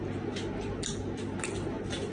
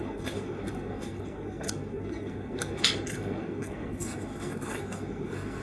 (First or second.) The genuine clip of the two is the first